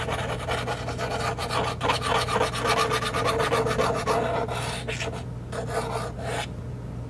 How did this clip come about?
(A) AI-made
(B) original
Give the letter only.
B